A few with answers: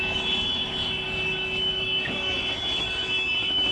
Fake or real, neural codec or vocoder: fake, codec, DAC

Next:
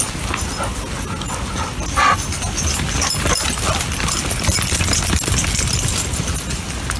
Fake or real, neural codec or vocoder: real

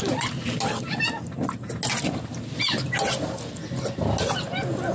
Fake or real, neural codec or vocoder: real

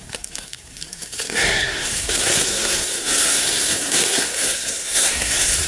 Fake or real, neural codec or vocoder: fake, codec, SNAC